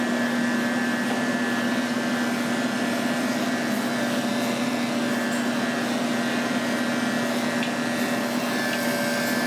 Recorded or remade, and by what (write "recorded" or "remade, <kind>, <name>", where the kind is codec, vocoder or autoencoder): recorded